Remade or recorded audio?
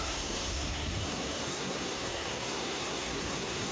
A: remade